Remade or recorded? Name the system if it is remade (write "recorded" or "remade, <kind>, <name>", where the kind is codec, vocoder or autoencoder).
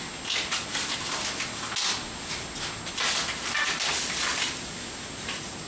recorded